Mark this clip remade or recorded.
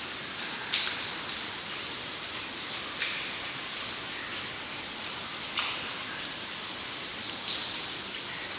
recorded